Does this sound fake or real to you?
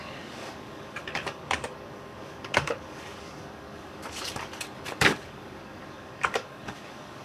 fake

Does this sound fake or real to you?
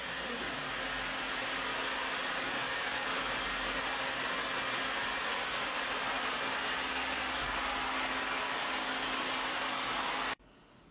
real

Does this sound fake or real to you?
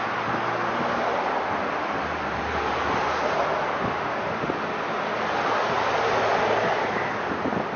real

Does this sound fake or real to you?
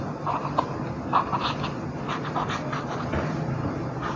real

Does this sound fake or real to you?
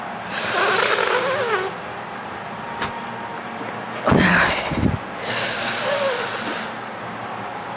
real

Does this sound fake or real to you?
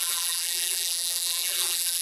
fake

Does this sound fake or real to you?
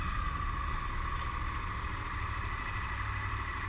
real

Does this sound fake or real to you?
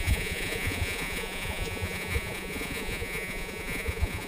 fake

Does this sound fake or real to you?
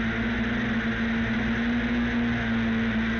real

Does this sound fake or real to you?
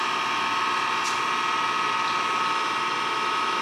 real